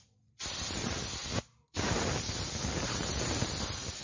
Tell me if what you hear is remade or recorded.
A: recorded